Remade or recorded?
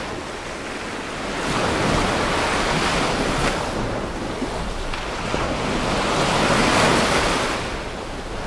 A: recorded